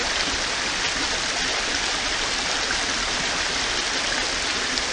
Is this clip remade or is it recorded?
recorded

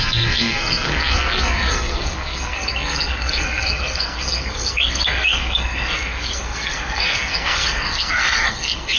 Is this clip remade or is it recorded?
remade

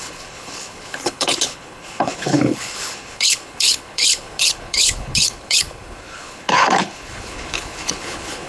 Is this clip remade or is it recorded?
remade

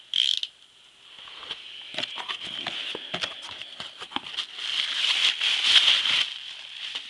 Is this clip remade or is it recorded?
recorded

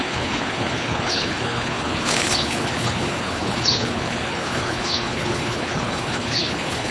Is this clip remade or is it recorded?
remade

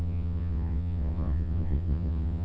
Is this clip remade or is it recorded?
remade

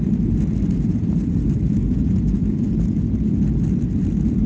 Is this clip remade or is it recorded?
recorded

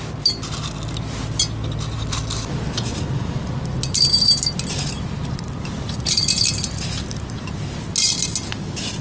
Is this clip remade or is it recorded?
recorded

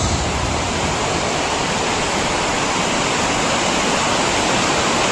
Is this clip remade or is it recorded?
recorded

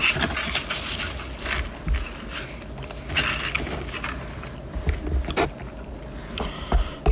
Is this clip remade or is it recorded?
recorded